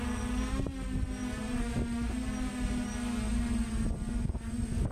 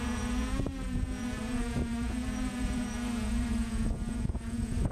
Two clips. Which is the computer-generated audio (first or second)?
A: second